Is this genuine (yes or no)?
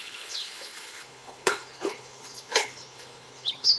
no